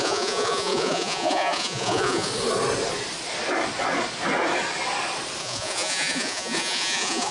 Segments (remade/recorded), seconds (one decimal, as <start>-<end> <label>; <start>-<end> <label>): 0.0-2.3 remade; 2.3-5.4 recorded; 5.4-7.3 remade